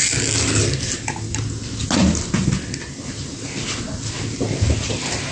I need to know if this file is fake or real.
real